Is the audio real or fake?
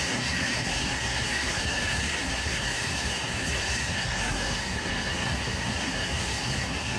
fake